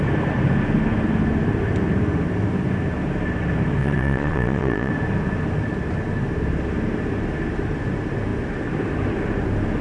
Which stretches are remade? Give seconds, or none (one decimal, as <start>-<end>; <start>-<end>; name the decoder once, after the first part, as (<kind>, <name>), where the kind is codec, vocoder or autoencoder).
3.8-4.9 (vocoder, Vocos)